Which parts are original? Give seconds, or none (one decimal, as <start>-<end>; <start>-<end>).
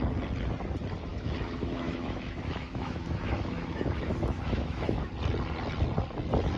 0.0-1.1; 5.1-6.6